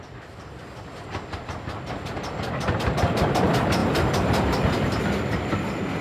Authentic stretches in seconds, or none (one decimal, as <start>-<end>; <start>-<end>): 0.0-3.8; 5.5-6.0

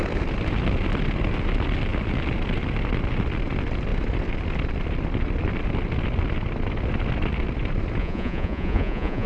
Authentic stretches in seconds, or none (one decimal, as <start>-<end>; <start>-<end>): 0.0-8.0